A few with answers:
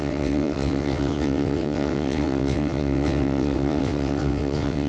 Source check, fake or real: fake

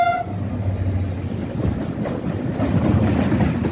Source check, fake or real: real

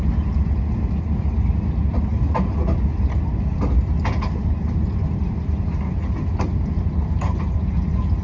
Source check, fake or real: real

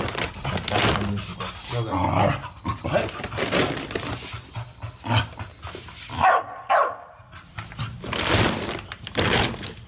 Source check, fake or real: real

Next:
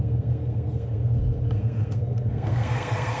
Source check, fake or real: fake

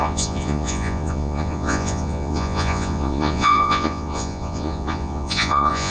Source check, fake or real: fake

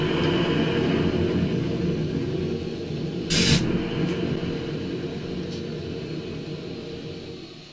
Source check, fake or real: real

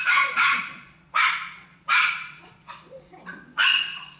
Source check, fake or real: fake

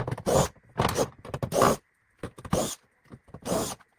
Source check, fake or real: real